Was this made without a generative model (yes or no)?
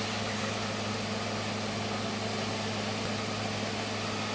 yes